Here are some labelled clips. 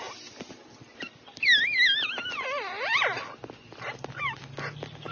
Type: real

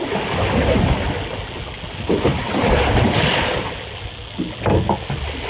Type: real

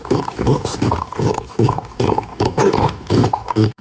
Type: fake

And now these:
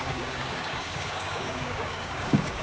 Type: fake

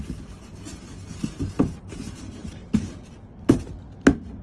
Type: real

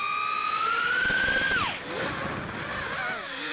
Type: real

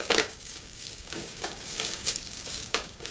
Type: fake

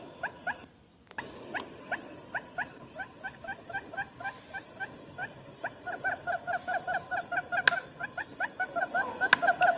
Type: real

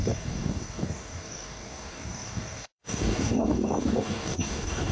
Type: fake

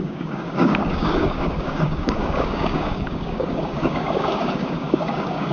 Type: fake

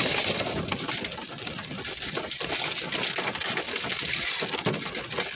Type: real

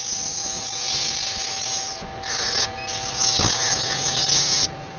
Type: real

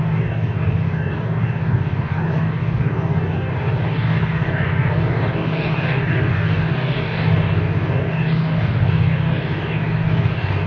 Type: fake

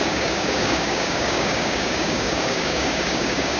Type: fake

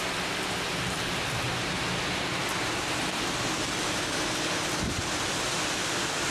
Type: real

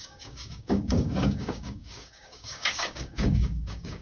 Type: fake